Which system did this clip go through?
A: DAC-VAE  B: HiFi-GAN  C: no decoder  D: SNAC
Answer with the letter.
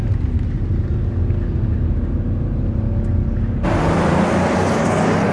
C